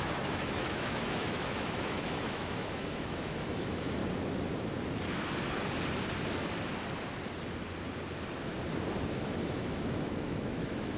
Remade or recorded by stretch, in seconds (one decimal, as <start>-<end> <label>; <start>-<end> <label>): 0.0-4.0 remade; 4.0-9.1 recorded; 9.1-11.0 remade